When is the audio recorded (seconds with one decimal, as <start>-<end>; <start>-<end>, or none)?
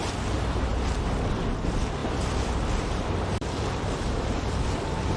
0.0-2.0